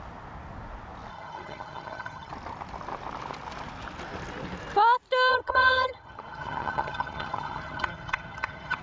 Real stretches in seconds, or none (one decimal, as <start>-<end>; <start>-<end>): 0.0-1.1; 2.3-5.3